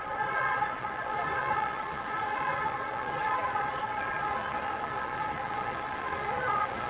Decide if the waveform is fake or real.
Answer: fake